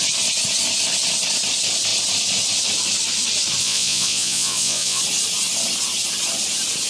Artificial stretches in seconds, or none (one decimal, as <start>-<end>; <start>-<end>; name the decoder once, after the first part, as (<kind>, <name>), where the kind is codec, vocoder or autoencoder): 3.6-5.0 (vocoder, Vocos)